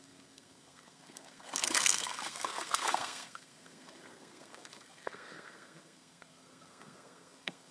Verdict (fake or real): fake